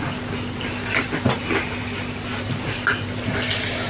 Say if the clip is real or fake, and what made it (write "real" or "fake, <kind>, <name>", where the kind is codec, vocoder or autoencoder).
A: real